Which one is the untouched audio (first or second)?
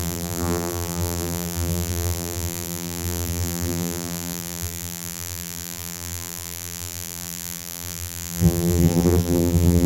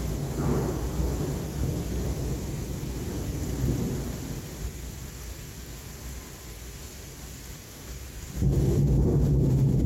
second